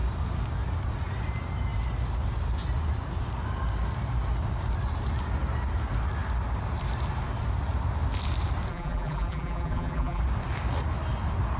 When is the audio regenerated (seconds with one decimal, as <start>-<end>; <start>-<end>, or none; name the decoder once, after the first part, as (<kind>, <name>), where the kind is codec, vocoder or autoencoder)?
8.7-10.2 (vocoder, BigVGAN v2)